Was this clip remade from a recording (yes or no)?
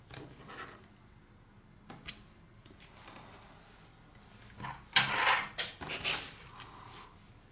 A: no